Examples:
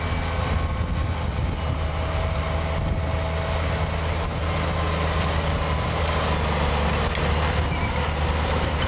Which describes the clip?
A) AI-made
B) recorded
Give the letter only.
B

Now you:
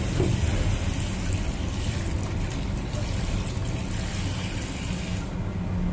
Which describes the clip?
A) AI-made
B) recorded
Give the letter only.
B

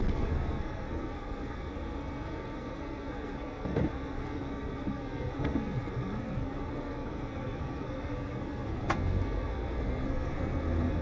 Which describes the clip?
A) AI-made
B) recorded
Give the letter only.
A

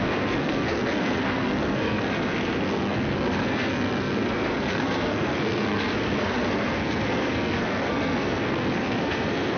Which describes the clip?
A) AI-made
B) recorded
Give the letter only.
A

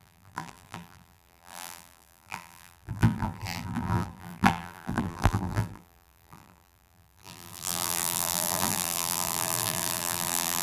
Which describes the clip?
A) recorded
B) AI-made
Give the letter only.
B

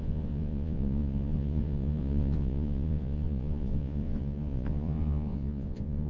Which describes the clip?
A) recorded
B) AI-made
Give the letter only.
B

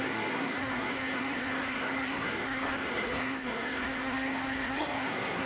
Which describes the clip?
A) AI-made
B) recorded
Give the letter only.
A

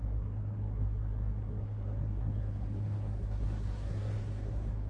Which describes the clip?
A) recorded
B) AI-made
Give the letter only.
B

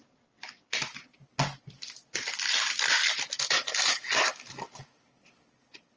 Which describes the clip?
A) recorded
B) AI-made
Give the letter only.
A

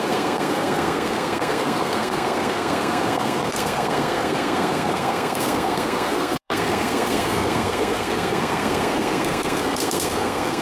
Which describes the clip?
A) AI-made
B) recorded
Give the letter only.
A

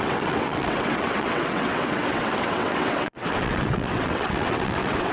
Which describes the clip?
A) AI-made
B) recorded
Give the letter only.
A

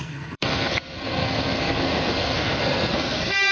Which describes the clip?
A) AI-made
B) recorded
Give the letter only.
A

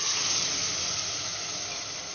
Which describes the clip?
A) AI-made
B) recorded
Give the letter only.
B